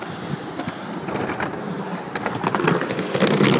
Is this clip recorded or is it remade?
recorded